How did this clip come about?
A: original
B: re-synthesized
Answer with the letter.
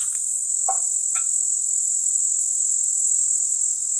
A